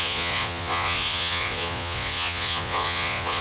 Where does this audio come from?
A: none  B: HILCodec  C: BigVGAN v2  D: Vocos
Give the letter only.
D